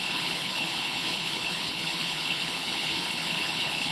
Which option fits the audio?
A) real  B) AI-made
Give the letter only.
B